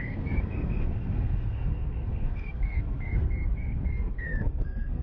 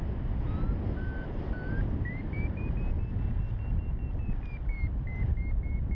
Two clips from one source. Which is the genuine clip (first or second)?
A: second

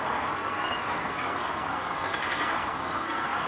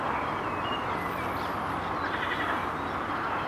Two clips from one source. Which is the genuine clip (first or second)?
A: second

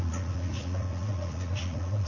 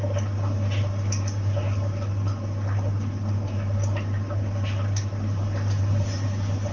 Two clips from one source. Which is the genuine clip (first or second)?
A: second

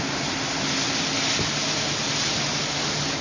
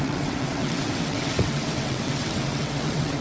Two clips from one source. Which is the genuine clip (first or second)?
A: first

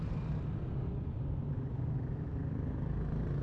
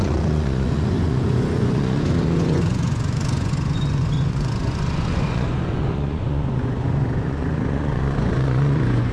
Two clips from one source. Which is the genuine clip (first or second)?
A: first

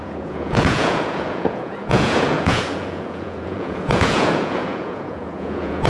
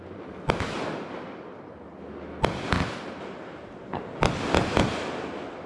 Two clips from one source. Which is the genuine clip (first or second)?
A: second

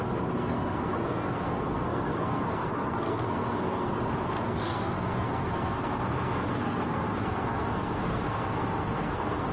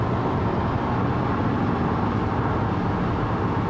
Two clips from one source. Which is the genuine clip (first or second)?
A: second